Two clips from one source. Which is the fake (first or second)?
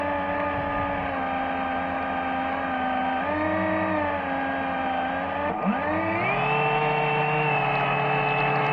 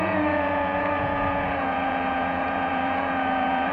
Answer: second